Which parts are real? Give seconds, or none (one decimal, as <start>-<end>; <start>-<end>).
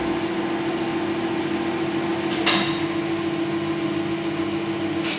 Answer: 0.0-5.2